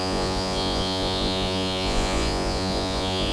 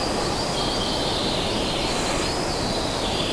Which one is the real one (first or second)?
second